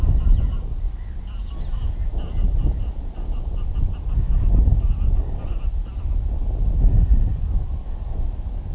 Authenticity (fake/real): real